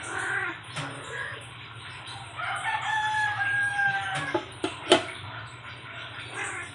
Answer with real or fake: fake